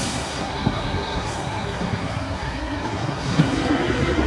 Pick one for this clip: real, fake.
fake